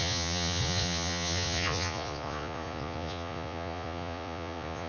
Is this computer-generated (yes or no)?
yes